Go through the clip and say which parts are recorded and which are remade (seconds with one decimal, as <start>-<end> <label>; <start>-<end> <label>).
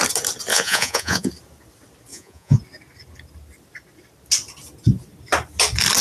0.0-0.5 recorded; 0.5-1.3 remade; 1.3-2.1 recorded; 2.1-2.6 remade; 2.6-6.0 recorded